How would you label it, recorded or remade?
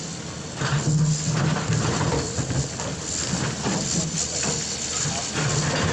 recorded